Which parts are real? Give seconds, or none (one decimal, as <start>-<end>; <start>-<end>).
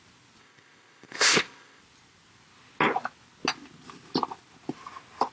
0.0-0.4; 1.8-5.3